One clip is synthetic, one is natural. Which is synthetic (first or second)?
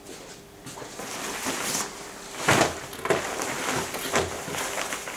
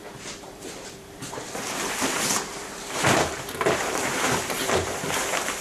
second